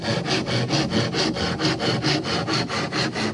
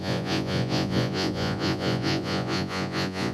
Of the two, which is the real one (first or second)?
first